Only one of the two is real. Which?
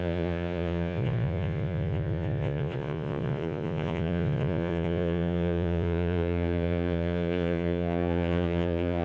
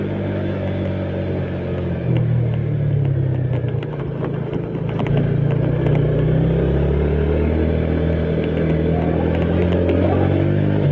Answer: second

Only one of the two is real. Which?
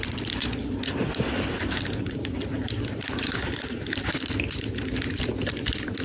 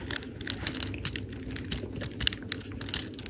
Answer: second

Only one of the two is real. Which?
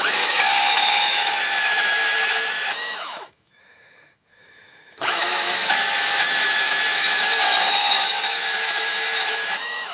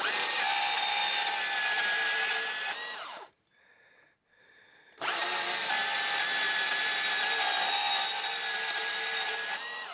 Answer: second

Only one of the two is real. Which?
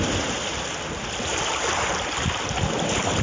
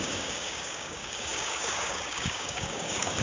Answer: first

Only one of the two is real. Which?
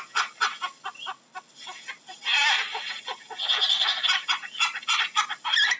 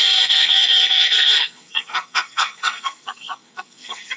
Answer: first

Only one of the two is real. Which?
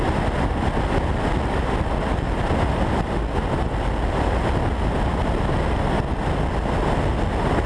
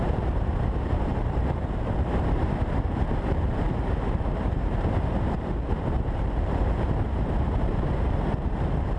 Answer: first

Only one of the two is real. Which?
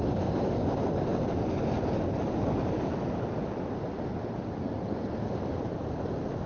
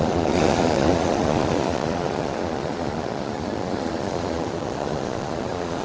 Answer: first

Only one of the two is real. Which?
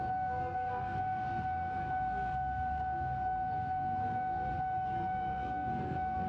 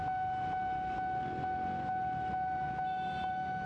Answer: second